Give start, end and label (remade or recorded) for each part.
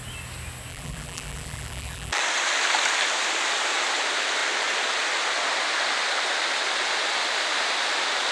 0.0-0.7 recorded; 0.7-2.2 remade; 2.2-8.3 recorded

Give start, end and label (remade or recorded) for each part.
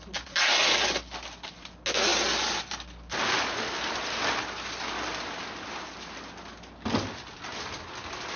0.0-8.4 recorded